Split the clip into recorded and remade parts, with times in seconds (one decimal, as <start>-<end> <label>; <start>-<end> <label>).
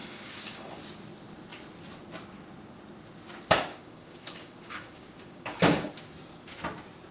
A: 0.0-0.8 remade; 0.8-3.7 recorded; 3.7-5.9 remade; 5.9-7.1 recorded